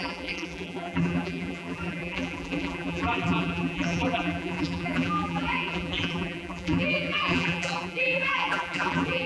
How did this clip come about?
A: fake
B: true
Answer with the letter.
A